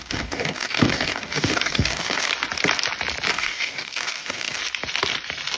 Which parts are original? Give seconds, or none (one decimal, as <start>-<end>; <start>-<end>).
2.3-3.3; 4.6-5.6